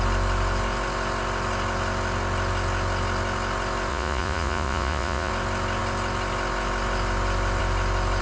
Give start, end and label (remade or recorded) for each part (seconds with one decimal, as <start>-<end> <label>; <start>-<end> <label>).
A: 0.0-3.9 recorded; 3.9-5.3 remade; 5.3-8.2 recorded